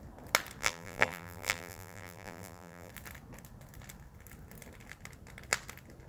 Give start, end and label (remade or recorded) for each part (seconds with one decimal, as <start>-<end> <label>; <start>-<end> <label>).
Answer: 0.0-0.6 recorded; 0.6-2.9 remade; 2.9-6.1 recorded